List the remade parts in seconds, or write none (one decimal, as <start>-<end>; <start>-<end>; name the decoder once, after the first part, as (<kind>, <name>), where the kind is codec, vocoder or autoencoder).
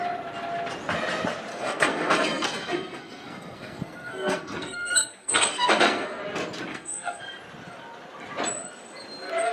1.5-6.2 (codec, SNAC); 6.7-7.2